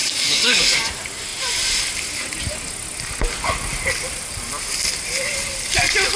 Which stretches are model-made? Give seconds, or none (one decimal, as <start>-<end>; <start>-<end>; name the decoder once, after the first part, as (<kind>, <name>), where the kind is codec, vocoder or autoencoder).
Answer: 0.0-0.9 (codec, DAC)